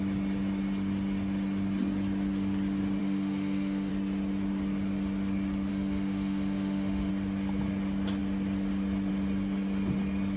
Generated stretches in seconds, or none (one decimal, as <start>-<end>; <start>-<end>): 3.0-3.9; 5.7-7.1